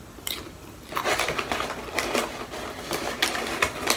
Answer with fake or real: real